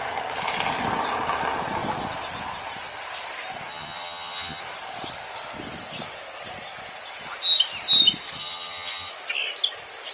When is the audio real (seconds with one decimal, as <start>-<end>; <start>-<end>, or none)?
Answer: 0.0-3.7; 4.6-8.4; 9.1-10.1